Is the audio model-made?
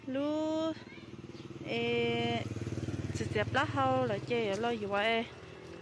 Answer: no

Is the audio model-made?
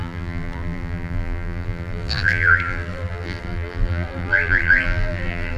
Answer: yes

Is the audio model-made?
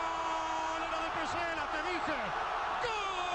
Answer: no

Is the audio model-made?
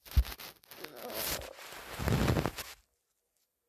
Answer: no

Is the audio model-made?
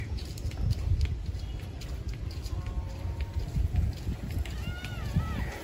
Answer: no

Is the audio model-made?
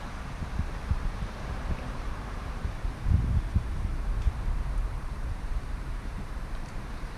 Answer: yes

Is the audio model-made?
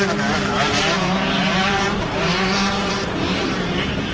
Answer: yes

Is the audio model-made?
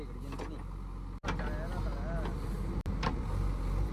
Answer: no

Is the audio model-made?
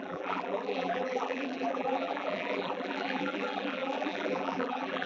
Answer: yes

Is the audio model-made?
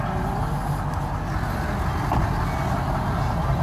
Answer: no